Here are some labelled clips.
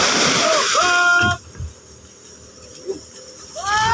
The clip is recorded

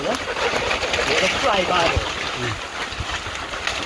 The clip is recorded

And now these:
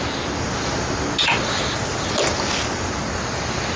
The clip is recorded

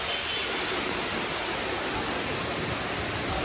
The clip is recorded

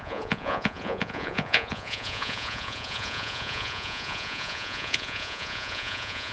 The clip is remade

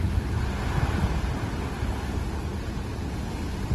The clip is recorded